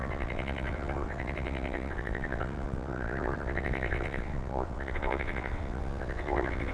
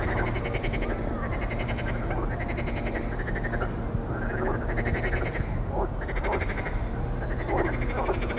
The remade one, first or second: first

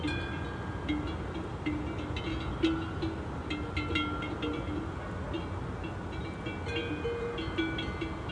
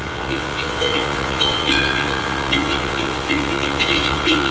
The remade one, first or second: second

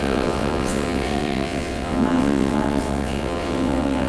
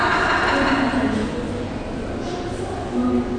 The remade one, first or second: first